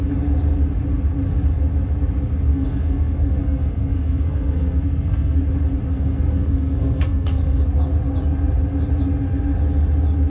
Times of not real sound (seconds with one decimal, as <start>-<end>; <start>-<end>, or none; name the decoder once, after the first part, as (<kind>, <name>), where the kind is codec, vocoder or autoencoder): 2.5-5.4 (codec, SNAC); 5.9-7.6